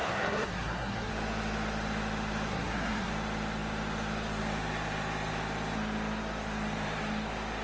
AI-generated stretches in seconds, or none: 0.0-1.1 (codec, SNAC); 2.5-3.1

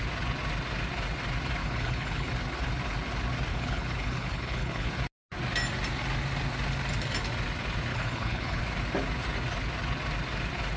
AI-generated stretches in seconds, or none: 1.6-2.3 (codec, HILCodec); 3.5-4.9; 7.9-8.6

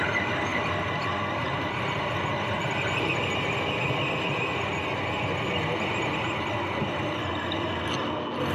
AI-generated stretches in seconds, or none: none

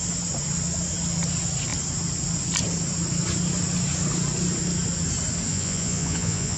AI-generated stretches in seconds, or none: 5.5-6.6 (vocoder, Vocos)

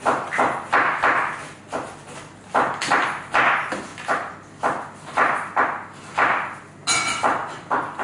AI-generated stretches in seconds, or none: none

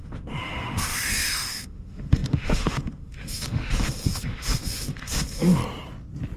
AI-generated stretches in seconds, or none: 0.0-5.6 (autoencoder, DAC-VAE)

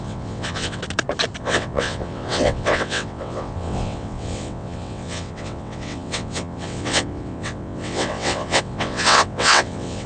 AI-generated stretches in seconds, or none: 0.0-0.8 (vocoder, WaveNeXt); 1.4-10.1

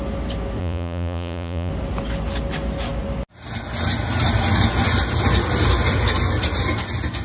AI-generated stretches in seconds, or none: 0.6-1.7 (vocoder, Vocos)